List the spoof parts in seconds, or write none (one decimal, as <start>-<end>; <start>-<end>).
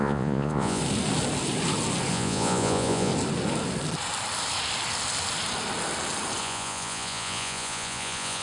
0.0-0.8; 2.1-3.1; 6.4-8.4